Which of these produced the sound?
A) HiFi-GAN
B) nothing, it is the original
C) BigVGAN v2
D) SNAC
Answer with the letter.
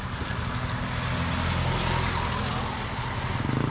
B